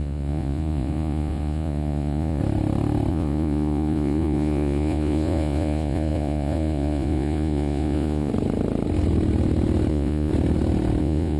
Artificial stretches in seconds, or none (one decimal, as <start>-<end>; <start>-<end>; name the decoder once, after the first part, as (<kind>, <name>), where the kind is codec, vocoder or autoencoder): 0.0-2.4 (vocoder, Vocos); 3.1-8.3; 9.9-10.3; 11.0-11.4